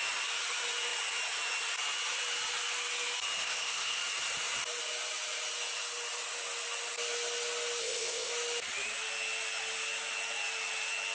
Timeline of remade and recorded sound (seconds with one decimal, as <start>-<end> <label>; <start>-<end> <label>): 0.0-3.4 recorded; 3.4-4.0 remade; 4.0-7.8 recorded; 7.8-8.3 remade; 8.3-11.1 recorded

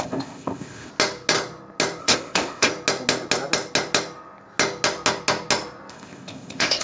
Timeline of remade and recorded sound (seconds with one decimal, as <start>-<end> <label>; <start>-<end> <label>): 0.0-0.9 remade; 0.9-2.0 recorded; 2.0-2.7 remade; 2.7-5.9 recorded; 5.9-6.8 remade

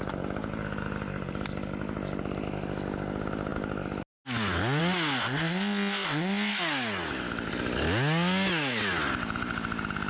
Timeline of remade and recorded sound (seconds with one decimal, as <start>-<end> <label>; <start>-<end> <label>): 0.0-5.2 recorded; 5.2-6.6 remade; 6.6-10.1 recorded

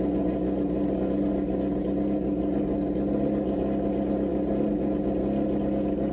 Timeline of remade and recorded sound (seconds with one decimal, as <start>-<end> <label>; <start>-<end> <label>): 0.0-6.1 recorded

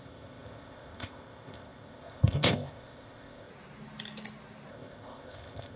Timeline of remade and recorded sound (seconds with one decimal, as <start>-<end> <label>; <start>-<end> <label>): 0.0-3.5 remade; 3.5-4.7 recorded; 4.7-5.8 remade

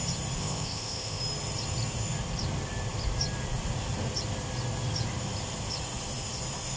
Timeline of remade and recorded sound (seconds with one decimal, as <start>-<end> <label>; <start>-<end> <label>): 0.0-0.4 recorded; 0.4-1.2 remade; 1.2-6.8 recorded

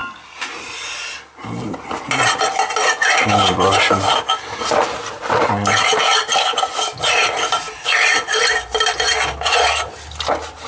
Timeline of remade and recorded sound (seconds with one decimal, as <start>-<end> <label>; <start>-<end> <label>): 0.0-10.7 recorded

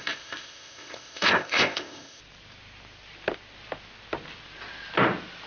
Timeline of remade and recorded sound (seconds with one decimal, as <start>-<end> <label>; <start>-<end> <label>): 0.0-2.2 remade; 2.2-5.5 recorded